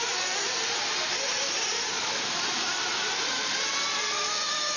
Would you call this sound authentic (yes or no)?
yes